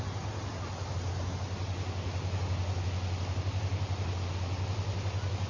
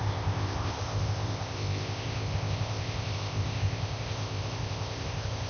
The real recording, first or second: first